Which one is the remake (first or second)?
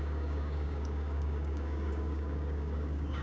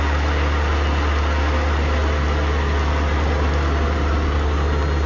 first